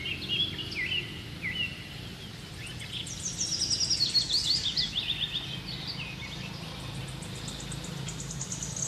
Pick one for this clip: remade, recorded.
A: recorded